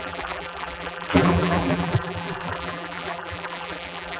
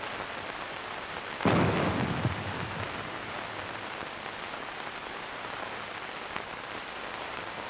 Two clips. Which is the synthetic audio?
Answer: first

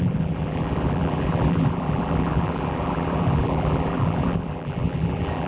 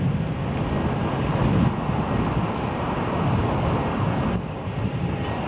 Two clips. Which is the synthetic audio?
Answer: first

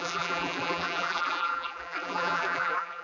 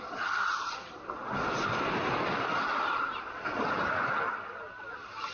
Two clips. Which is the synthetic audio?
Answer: first